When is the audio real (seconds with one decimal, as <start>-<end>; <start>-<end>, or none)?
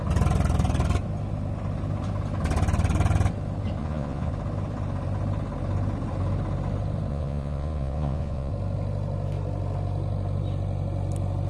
0.0-3.8; 4.3-7.1; 8.5-11.5